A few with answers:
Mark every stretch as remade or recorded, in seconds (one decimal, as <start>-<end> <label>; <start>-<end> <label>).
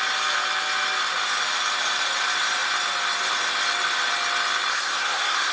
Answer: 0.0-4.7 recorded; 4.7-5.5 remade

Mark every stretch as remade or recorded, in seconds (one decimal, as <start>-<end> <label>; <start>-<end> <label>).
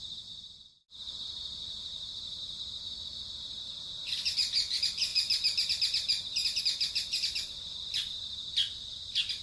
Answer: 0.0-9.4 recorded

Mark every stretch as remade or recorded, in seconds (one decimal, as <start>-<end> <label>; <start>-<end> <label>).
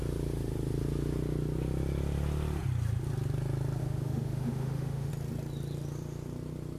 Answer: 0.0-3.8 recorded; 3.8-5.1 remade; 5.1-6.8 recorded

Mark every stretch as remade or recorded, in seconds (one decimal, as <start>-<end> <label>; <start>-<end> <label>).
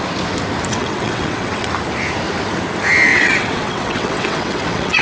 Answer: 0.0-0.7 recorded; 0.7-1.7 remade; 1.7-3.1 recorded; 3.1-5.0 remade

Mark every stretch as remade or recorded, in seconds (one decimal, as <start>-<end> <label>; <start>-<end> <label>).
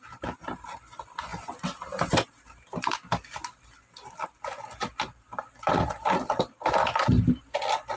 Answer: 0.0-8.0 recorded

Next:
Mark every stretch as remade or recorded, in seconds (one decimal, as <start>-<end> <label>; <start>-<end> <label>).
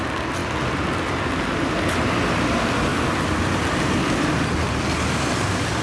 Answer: 0.0-2.9 recorded; 2.9-4.8 remade; 4.8-5.8 recorded